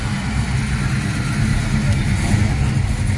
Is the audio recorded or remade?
recorded